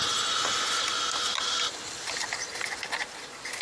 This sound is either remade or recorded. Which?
recorded